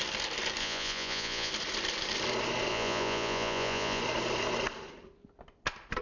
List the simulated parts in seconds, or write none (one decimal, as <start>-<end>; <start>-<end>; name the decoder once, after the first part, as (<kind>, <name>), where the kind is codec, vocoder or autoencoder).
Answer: 0.6-1.5 (vocoder, Vocos); 2.7-4.0